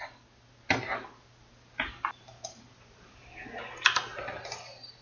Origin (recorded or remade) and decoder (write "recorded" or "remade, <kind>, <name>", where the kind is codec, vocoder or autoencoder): recorded